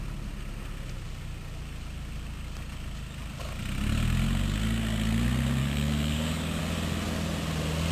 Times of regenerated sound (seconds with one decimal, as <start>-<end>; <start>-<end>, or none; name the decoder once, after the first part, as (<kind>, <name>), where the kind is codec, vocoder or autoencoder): 5.6-6.6 (codec, DAC)